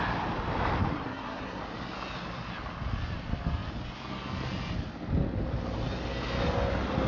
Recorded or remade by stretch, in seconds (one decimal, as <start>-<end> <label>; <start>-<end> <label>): 0.0-0.9 recorded; 0.9-1.6 remade; 1.6-7.1 recorded